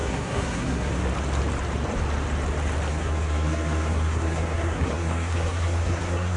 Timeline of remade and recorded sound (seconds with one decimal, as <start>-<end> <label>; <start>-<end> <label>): 0.0-0.9 remade; 0.9-2.9 recorded; 2.9-6.4 remade